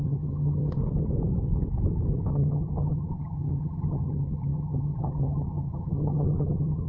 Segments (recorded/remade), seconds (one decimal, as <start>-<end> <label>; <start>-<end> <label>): 0.0-0.8 remade; 0.8-2.3 recorded; 2.3-6.9 remade